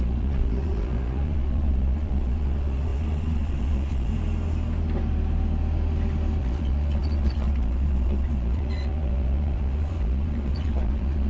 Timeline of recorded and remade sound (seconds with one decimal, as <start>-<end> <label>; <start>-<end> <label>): 0.0-4.1 remade; 4.1-6.4 recorded; 6.4-11.3 remade